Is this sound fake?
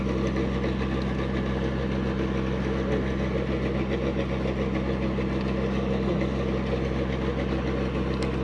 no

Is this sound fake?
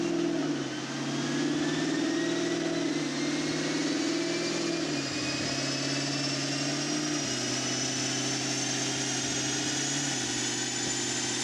no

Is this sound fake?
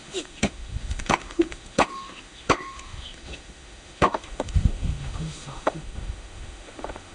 yes